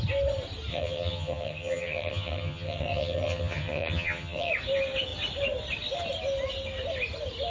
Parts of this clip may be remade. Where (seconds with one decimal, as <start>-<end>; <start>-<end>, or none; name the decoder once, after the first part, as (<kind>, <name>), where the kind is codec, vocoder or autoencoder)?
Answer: 0.7-4.5 (vocoder, HiFi-GAN)